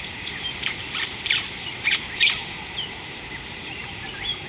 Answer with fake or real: fake